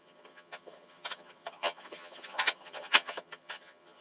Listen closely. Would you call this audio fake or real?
fake